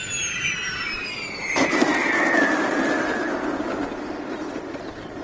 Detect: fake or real real